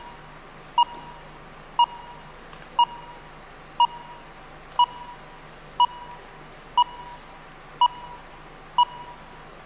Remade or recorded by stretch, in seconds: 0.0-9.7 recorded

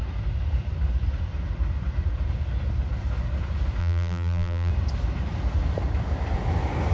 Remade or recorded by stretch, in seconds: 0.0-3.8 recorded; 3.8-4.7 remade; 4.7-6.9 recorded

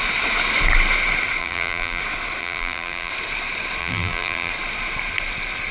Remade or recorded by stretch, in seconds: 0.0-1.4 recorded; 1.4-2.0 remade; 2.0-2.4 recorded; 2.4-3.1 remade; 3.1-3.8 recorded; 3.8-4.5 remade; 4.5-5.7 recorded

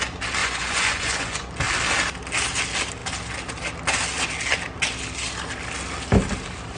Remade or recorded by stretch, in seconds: 0.0-0.4 recorded; 0.4-1.5 remade; 1.5-6.8 recorded

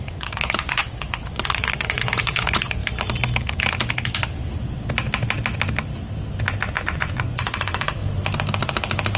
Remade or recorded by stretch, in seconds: 0.0-2.8 remade; 2.8-6.8 recorded; 6.8-8.0 remade; 8.0-9.2 recorded

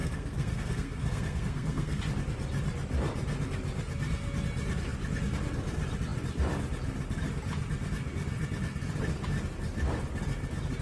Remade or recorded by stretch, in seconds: 0.0-2.0 remade; 2.0-10.8 recorded